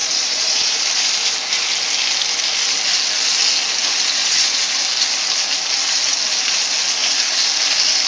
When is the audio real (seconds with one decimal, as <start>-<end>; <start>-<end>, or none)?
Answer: 0.8-4.2; 4.8-8.1